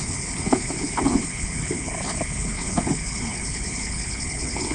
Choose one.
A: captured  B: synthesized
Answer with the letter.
B